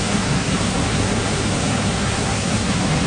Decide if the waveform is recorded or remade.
remade